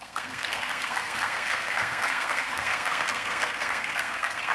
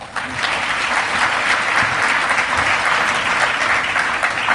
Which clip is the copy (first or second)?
first